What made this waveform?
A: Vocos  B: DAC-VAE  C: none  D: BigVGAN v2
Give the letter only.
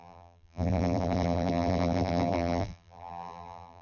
D